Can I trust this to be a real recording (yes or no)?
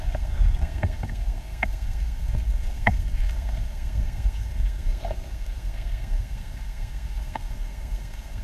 no